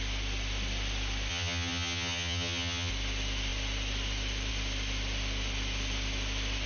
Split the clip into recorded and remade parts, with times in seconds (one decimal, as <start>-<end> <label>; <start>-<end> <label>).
0.0-1.3 recorded; 1.3-2.9 remade; 2.9-6.7 recorded